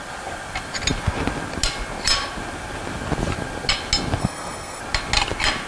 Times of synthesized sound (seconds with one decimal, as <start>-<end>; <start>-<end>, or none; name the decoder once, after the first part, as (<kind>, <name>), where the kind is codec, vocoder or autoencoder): 4.2-4.8 (codec, SNAC)